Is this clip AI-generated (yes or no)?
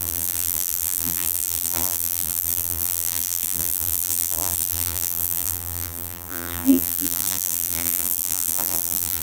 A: yes